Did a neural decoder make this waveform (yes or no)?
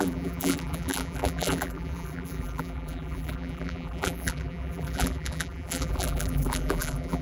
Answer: yes